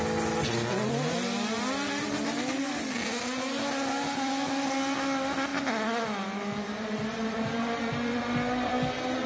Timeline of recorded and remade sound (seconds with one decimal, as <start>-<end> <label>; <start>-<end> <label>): 0.0-5.5 recorded; 5.5-8.2 remade; 8.2-9.3 recorded